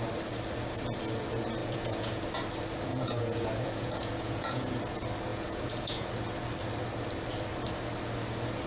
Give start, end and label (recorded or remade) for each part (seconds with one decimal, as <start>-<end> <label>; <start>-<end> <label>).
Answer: 0.0-1.6 recorded; 1.6-2.2 remade; 2.2-2.9 recorded; 2.9-4.7 remade; 4.7-5.3 recorded; 5.3-6.1 remade; 6.1-8.7 recorded